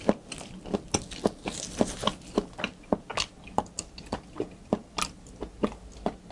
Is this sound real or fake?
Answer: real